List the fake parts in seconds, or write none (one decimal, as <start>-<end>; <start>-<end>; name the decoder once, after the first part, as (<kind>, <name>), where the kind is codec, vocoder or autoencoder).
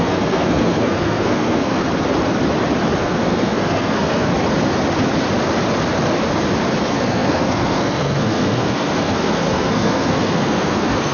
0.0-1.8 (codec, SNAC); 3.0-4.3; 6.8-11.1